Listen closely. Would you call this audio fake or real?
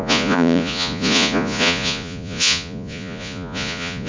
fake